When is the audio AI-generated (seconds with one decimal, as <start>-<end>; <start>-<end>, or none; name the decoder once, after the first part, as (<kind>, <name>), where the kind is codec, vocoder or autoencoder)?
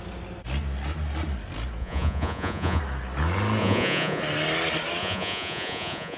1.8-2.8 (vocoder, Vocos); 3.6-4.2; 5.0-6.2